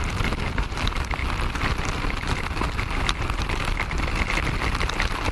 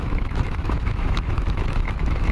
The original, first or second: first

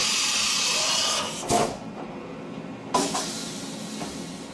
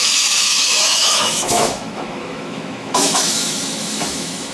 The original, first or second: first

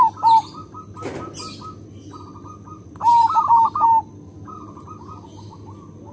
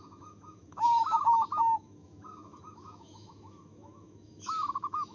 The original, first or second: first